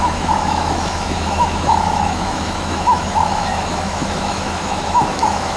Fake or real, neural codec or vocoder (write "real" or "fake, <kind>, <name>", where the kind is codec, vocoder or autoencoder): fake, autoencoder, DAC-VAE